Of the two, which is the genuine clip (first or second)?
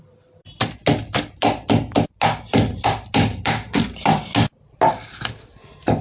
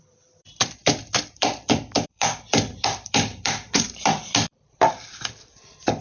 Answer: first